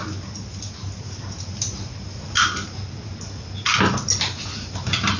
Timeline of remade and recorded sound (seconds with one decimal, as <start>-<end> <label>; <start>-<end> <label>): 0.0-5.2 recorded